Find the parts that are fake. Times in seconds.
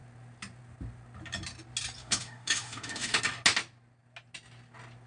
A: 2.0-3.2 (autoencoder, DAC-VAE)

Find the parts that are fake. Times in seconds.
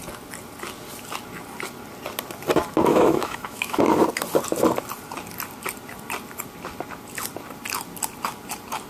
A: 2.9-3.8 (autoencoder, DAC-VAE)